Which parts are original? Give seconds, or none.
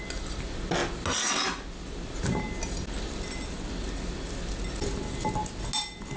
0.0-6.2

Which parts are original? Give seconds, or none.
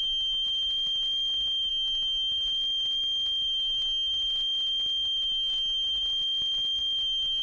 0.0-7.4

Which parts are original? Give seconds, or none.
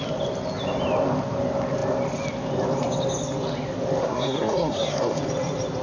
0.0-4.0; 5.2-5.8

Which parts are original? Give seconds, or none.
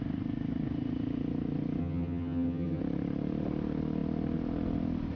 0.0-1.8; 2.8-5.2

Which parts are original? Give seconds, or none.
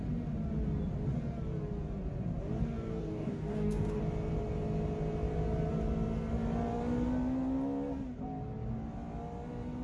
0.0-2.9; 4.0-9.8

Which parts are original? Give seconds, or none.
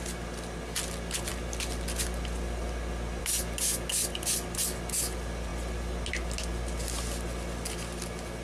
0.0-8.4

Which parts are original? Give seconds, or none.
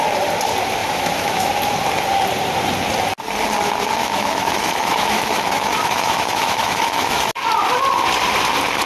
0.0-0.8; 1.5-4.0; 7.2-8.9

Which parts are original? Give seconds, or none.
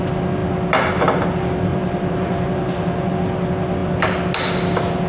0.0-1.7; 3.1-5.1